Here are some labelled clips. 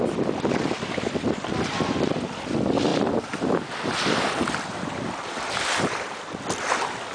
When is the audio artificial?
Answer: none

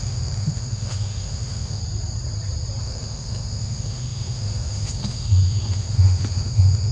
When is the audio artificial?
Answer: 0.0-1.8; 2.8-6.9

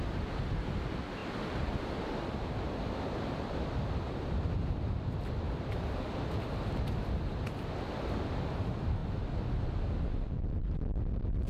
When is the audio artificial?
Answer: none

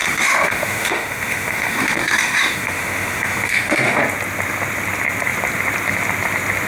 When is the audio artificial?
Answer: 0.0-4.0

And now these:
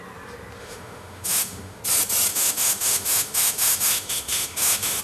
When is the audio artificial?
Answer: 0.6-1.8; 2.3-5.0

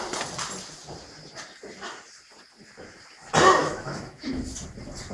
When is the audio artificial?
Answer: 3.6-4.4